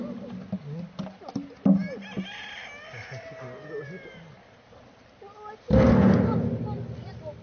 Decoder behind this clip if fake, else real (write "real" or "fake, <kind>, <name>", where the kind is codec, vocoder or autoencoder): real